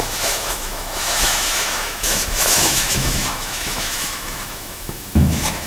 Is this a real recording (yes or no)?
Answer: no